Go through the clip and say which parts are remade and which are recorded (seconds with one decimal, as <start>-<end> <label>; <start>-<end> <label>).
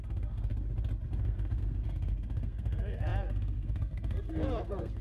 0.0-0.5 remade; 0.5-1.2 recorded; 1.2-5.0 remade